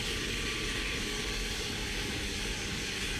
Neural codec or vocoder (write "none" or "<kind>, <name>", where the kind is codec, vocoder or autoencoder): codec, DAC